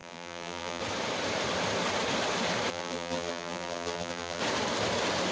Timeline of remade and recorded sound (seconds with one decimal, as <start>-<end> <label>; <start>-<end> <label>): 0.0-0.8 remade; 0.8-2.7 recorded; 2.7-4.4 remade; 4.4-5.3 recorded